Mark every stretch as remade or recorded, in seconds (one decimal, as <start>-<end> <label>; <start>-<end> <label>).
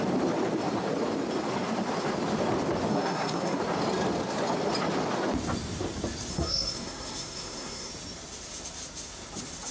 0.0-2.9 recorded; 2.9-3.6 remade; 3.6-6.3 recorded; 6.3-7.9 remade; 7.9-9.7 recorded